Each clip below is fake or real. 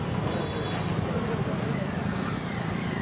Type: real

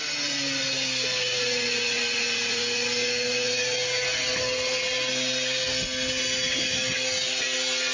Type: real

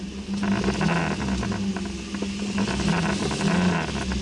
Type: real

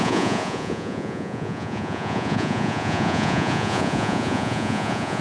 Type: fake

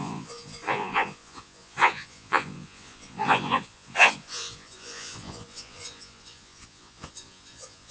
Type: fake